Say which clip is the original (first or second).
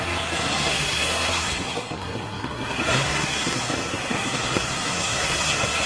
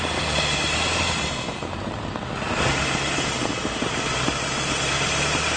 second